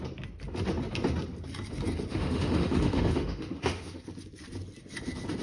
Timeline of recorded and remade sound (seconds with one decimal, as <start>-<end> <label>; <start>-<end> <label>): 0.0-2.1 recorded; 2.1-4.1 remade; 4.1-5.4 recorded